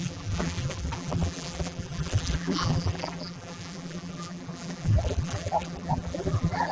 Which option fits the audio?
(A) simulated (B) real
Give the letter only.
A